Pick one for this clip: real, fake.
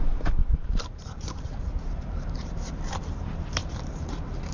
fake